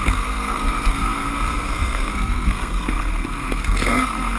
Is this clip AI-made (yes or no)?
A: yes